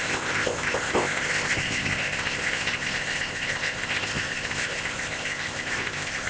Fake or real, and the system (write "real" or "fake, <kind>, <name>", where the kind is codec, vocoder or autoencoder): fake, codec, ZipCodec